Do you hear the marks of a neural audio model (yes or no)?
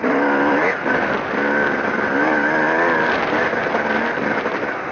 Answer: no